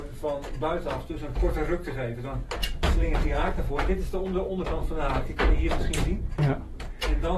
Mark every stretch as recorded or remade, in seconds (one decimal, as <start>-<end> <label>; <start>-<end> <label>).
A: 0.0-2.6 recorded; 2.6-3.7 remade; 3.7-4.8 recorded; 4.8-5.4 remade; 5.4-7.4 recorded